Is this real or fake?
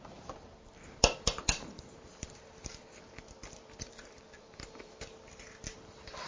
fake